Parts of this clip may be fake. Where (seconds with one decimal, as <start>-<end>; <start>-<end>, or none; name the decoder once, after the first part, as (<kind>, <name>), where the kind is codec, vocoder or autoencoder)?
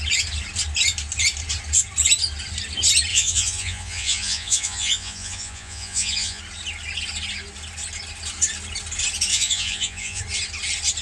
3.1-6.4 (vocoder, Vocos); 9.3-10.2